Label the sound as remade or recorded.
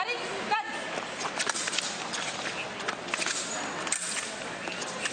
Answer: recorded